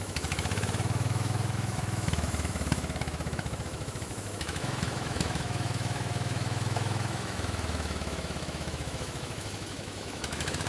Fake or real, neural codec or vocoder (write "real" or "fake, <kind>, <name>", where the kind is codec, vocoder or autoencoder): fake, autoencoder, DAC-VAE